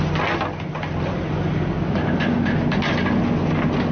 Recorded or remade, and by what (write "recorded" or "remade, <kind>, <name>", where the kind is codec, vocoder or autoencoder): recorded